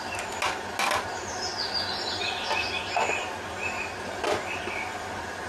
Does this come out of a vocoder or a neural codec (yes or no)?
no